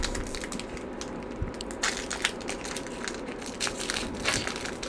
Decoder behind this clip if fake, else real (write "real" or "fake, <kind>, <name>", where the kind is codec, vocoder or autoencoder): real